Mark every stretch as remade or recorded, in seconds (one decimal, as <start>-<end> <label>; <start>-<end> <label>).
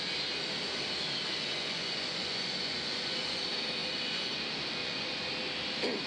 0.0-1.3 recorded; 1.3-3.4 remade; 3.4-3.8 recorded; 3.8-4.3 remade; 4.3-4.8 recorded; 4.8-5.3 remade; 5.3-6.1 recorded